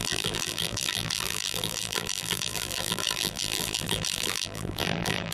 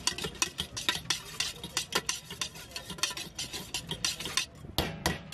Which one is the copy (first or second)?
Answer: first